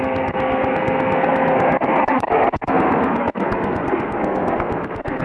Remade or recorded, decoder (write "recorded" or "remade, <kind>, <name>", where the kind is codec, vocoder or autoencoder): remade, codec, SNAC